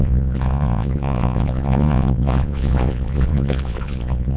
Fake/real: fake